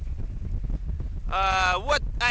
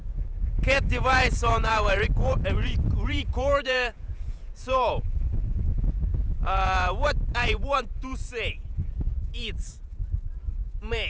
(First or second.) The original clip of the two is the first